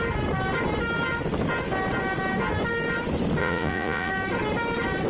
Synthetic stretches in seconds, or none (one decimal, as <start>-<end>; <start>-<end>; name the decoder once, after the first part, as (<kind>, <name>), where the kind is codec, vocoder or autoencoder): 3.4-4.1 (vocoder, Vocos)